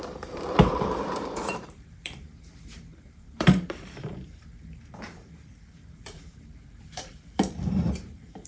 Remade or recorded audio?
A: remade